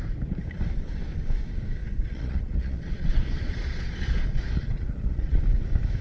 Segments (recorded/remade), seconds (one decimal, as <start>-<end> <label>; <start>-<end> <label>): 0.0-1.8 recorded; 1.8-5.4 remade; 5.4-6.0 recorded